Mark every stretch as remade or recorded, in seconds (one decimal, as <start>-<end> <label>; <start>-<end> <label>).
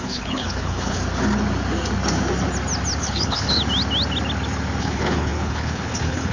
0.0-1.0 remade; 1.0-3.0 recorded; 3.0-3.6 remade; 3.6-4.8 recorded; 4.8-6.3 remade